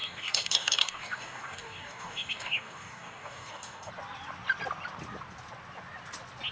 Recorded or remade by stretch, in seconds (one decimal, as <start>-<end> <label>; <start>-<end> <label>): 0.0-3.9 remade; 3.9-6.5 recorded